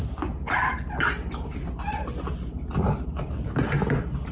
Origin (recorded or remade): recorded